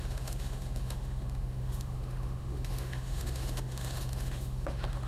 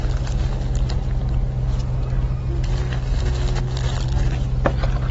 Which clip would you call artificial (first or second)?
first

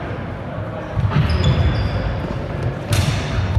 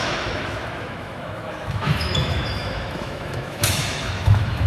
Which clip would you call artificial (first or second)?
second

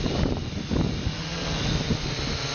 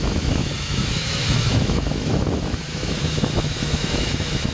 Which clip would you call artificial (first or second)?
second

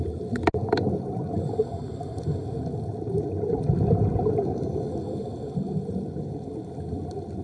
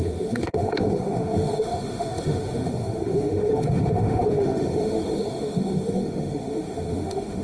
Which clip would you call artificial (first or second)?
second